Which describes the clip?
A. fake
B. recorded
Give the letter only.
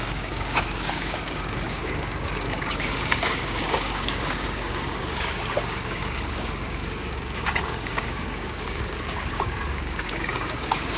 A